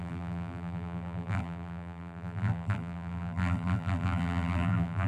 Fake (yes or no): yes